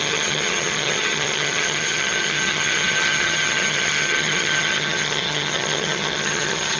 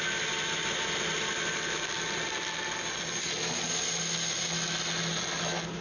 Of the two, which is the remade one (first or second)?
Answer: first